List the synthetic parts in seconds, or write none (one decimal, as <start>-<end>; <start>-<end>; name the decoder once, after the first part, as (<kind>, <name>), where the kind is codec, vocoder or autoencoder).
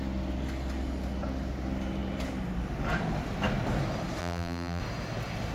4.2-4.8 (vocoder, BigVGAN v2)